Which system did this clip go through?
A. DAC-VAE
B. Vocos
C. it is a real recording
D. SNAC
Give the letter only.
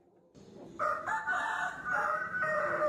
C